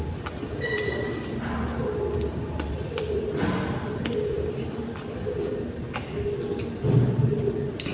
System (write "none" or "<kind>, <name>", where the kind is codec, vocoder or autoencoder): none